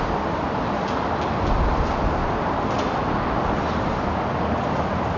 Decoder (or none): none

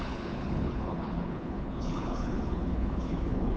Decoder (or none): codec, HILCodec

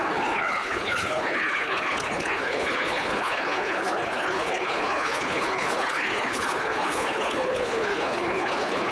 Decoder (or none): codec, HILCodec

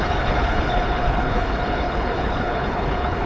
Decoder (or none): codec, HILCodec